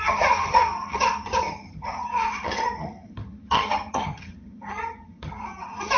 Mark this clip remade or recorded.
remade